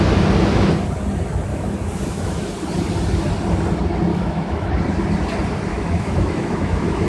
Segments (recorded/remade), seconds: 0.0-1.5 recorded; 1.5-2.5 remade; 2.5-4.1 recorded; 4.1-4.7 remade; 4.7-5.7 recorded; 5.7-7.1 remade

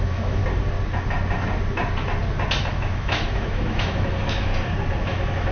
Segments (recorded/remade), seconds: 0.0-0.4 remade; 0.4-2.7 recorded; 2.7-4.5 remade; 4.5-5.0 recorded; 5.0-5.5 remade

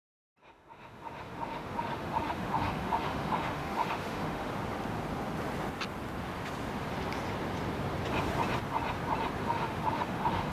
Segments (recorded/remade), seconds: 0.0-0.4 recorded; 0.4-4.5 remade; 4.5-9.4 recorded; 9.4-10.5 remade

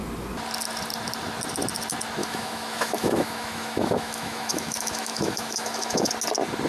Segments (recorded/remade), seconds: 0.0-2.2 recorded; 2.2-6.1 remade; 6.1-6.7 recorded

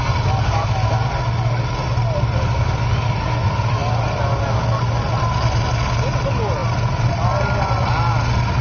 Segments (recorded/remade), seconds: 0.0-8.6 recorded